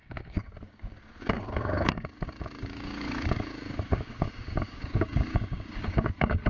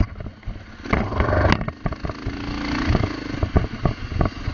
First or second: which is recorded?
second